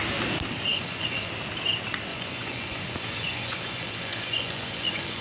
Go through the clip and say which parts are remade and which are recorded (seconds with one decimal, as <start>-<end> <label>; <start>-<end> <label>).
0.0-0.7 recorded; 0.7-1.3 remade; 1.3-2.1 recorded; 2.1-5.2 remade